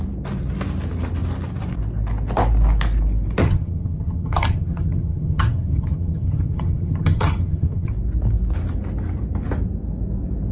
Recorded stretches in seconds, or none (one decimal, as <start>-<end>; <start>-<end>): 0.0-3.4; 7.9-10.5